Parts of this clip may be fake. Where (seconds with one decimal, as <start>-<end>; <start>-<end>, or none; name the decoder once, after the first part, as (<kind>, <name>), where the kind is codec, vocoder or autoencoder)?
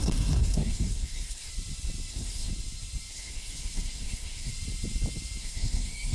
0.0-1.5 (codec, SNAC); 2.1-2.5; 3.1-4.5; 5.4-6.1